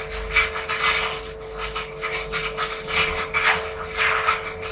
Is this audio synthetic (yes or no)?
no